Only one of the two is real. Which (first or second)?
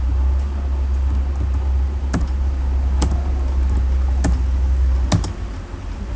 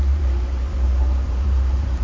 first